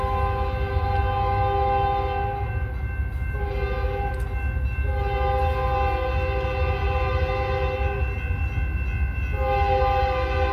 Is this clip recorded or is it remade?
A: recorded